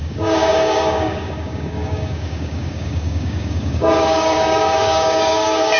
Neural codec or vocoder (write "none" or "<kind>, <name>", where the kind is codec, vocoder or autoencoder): codec, DAC